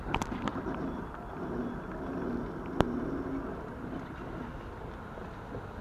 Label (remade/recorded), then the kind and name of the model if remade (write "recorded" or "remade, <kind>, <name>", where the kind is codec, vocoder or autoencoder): recorded